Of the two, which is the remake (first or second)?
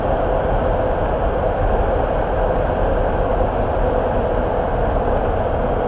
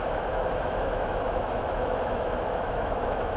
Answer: second